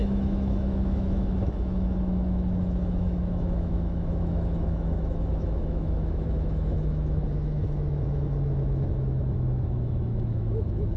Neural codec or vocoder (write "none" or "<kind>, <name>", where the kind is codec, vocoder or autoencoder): autoencoder, DAC-VAE